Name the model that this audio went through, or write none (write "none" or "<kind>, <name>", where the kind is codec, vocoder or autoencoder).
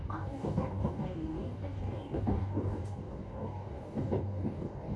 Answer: codec, DAC